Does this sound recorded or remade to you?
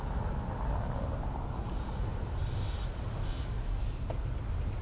recorded